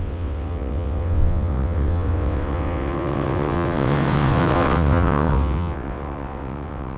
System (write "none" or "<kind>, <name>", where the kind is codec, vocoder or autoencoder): vocoder, WaveNeXt